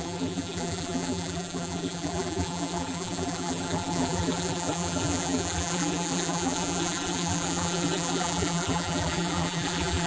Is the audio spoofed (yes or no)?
yes